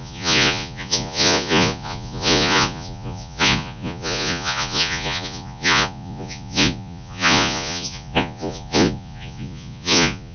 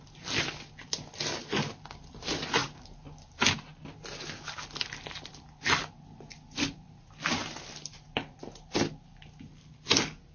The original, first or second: second